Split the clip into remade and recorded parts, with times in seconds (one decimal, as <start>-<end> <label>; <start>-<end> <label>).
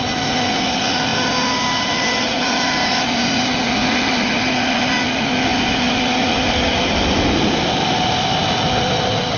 0.0-9.4 recorded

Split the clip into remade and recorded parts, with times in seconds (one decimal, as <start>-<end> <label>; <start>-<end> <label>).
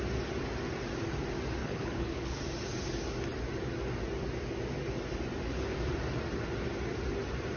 0.0-1.6 recorded; 1.6-2.4 remade; 2.4-7.6 recorded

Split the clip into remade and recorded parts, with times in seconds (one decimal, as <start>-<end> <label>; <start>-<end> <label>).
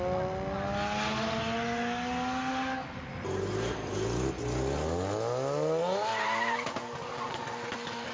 0.0-8.1 recorded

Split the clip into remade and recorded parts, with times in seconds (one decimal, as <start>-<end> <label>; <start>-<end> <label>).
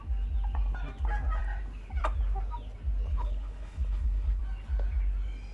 0.0-3.1 recorded; 3.1-4.4 remade; 4.4-5.5 recorded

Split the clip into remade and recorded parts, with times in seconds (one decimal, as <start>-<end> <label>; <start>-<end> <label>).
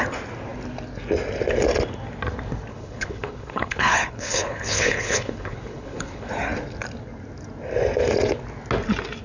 0.0-2.7 recorded; 2.7-6.3 remade; 6.3-9.2 recorded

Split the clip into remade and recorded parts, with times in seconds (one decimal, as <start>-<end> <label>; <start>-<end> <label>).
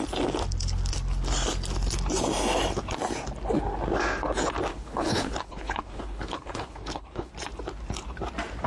0.0-4.7 recorded; 4.7-7.3 remade; 7.3-8.7 recorded